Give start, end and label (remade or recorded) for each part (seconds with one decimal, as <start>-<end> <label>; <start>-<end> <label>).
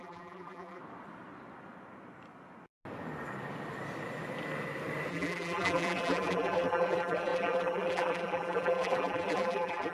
0.0-0.8 remade; 0.8-5.1 recorded; 5.1-9.9 remade